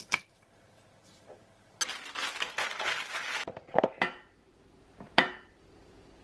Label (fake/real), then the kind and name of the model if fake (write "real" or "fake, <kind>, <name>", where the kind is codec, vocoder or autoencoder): real